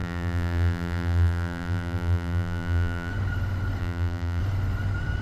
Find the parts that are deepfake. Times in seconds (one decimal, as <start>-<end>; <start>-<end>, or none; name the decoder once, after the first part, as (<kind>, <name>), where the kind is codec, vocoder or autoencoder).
0.0-3.1 (vocoder, BigVGAN v2); 3.8-4.4